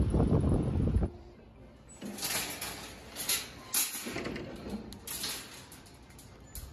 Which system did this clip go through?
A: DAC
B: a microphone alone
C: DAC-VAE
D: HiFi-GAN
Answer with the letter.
B